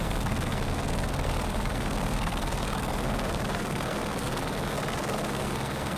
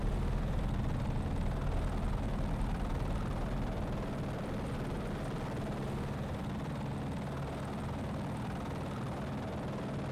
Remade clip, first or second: first